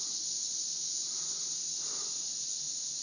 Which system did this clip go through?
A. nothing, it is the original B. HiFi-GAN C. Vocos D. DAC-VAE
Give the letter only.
A